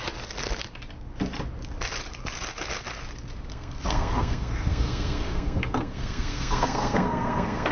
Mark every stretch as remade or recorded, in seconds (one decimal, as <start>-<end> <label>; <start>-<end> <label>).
0.0-3.5 recorded; 3.5-7.7 remade